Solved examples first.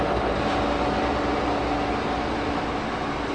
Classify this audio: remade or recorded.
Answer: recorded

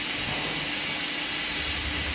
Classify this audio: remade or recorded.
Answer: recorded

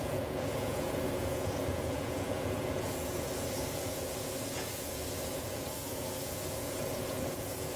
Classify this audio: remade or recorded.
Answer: remade